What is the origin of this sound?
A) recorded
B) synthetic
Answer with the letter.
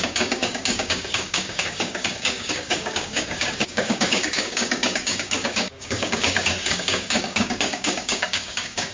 B